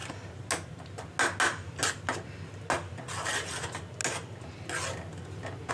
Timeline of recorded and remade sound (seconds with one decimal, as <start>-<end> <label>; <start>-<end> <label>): 0.0-5.7 recorded